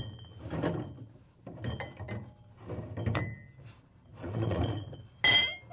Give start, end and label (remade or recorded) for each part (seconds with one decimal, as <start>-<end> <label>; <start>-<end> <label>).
0.0-4.1 recorded; 4.1-5.2 remade; 5.2-5.7 recorded

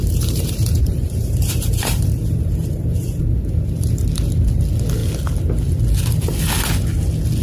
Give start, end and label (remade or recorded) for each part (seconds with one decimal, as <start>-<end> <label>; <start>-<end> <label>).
0.0-4.0 remade; 4.0-7.4 recorded

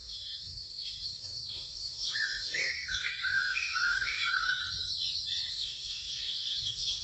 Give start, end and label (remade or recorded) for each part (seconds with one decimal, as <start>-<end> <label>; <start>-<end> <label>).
0.0-4.6 remade; 4.6-5.5 recorded; 5.5-7.0 remade